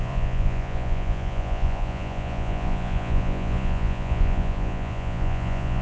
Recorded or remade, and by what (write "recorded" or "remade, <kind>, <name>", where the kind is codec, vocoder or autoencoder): remade, vocoder, Vocos